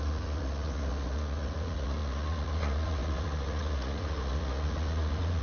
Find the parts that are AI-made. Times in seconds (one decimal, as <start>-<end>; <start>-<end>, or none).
0.0-5.4